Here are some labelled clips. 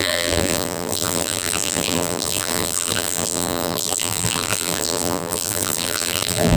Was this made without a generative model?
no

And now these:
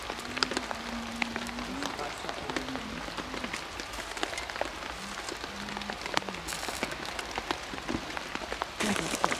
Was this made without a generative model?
yes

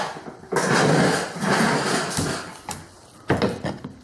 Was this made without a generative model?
yes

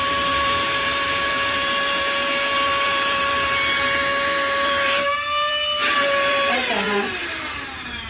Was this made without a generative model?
no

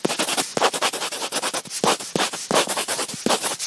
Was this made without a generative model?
yes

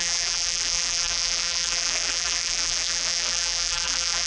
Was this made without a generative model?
no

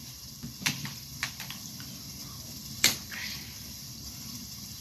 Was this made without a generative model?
no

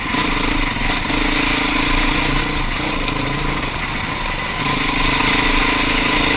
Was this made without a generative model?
yes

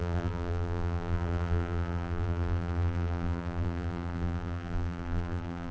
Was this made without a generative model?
no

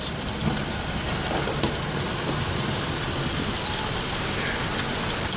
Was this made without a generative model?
no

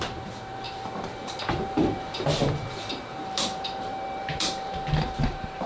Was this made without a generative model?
no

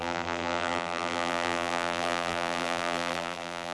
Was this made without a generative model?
no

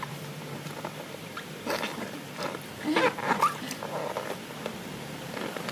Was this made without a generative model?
no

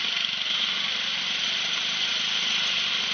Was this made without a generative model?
no